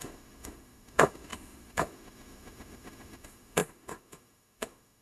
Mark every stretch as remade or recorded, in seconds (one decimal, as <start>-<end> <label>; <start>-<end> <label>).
0.0-5.0 remade